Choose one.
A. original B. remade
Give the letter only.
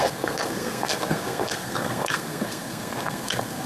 B